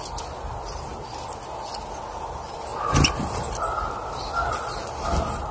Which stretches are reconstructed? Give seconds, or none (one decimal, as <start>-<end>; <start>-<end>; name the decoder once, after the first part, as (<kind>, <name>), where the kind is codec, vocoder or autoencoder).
none